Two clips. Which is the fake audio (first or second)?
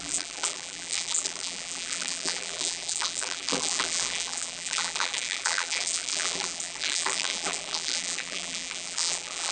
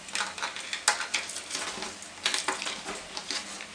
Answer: first